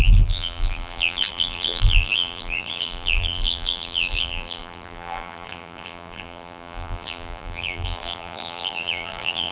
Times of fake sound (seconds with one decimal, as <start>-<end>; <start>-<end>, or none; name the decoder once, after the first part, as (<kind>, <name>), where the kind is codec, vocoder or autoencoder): 0.0-9.5 (vocoder, BigVGAN v2)